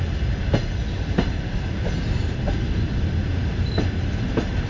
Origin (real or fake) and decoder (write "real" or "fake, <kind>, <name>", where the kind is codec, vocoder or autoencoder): real